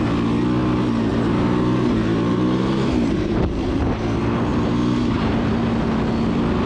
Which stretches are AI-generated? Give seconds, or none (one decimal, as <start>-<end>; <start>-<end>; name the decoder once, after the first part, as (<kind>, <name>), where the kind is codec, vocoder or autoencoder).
1.1-3.8 (vocoder, BigVGAN v2); 4.5-5.5